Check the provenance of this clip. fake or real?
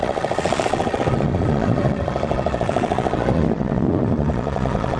fake